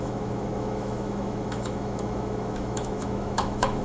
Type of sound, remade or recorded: remade